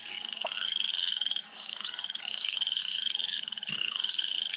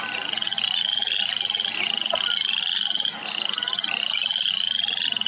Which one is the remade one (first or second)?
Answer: first